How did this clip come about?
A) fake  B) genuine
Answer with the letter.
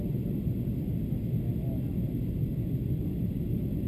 B